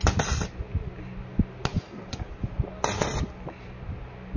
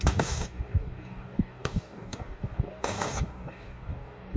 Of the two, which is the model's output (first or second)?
second